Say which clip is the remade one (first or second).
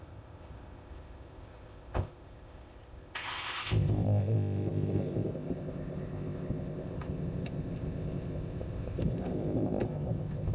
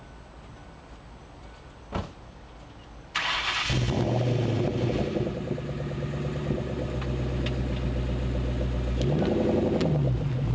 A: first